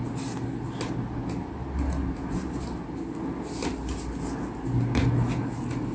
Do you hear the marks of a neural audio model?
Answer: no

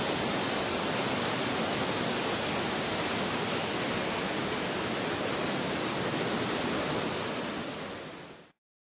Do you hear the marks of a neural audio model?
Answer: no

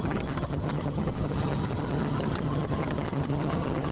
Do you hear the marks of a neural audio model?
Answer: yes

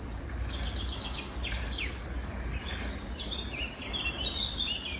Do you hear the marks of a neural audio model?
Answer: no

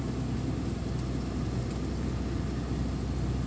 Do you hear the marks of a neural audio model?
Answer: no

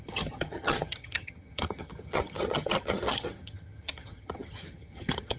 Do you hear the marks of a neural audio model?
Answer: yes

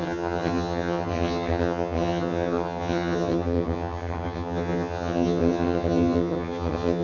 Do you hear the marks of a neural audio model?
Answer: yes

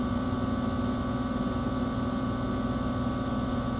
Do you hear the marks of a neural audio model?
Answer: no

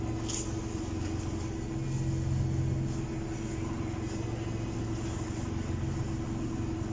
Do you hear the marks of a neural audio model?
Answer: no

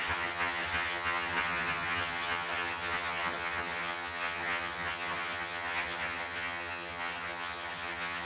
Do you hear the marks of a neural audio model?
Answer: yes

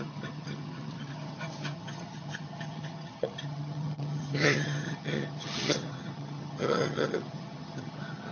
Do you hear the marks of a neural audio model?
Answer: yes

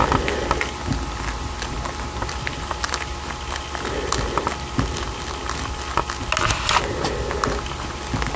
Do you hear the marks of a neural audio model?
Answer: no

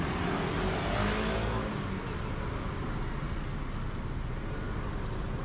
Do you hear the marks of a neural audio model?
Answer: no